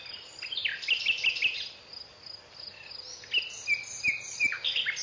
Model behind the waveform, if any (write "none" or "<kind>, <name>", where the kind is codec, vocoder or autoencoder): none